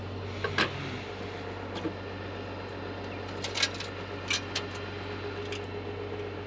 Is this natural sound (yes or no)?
yes